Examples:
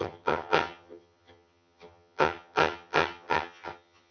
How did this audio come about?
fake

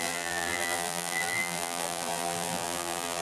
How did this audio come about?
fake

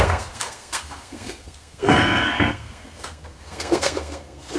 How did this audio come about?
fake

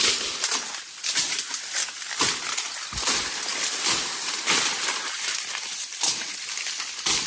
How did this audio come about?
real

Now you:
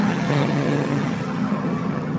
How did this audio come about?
fake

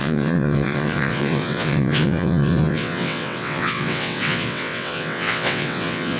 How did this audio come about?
fake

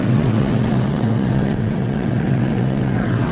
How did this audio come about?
fake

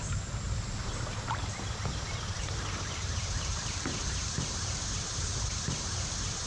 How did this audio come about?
fake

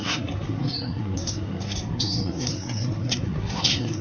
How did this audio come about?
fake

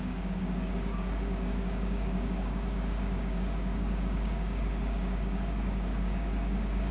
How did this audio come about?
fake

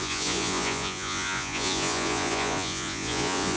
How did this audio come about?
fake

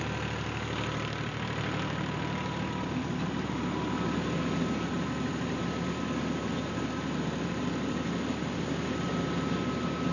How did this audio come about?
real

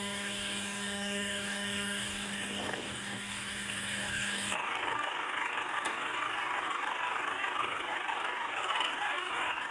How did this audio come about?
fake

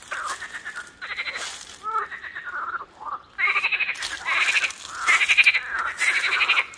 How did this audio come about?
real